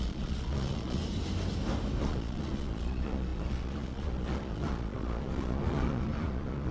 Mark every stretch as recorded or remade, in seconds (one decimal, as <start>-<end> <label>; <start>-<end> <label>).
0.0-1.0 remade; 1.0-2.0 recorded; 2.0-6.7 remade